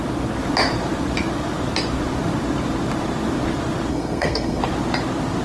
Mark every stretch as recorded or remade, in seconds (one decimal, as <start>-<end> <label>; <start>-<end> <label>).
0.0-3.9 recorded; 3.9-4.6 remade; 4.6-5.4 recorded